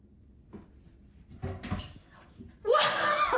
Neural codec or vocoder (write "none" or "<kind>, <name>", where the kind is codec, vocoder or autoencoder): none